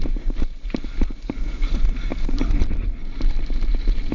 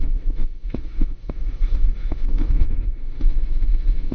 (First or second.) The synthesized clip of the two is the second